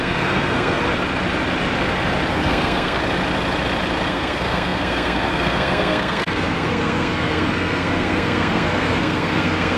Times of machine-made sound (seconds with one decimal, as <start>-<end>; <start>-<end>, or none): 0.0-0.8; 2.3-3.0; 4.1-9.8